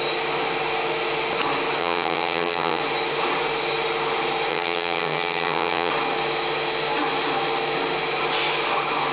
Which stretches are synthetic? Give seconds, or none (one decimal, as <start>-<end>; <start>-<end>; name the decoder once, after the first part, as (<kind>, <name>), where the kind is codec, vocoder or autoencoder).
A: 1.8-2.8 (vocoder, HiFi-GAN); 4.5-5.9